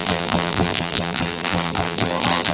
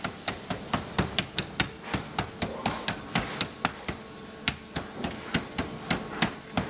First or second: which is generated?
first